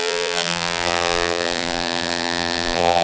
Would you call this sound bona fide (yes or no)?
no